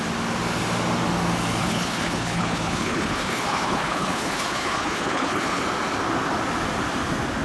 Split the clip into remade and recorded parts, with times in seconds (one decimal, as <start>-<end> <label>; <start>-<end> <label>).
0.0-1.6 recorded; 1.6-5.6 remade; 5.6-7.4 recorded